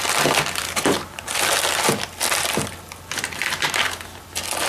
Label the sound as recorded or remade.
recorded